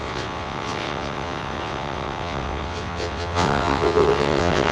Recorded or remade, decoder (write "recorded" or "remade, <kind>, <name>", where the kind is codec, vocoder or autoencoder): remade, vocoder, WaveNeXt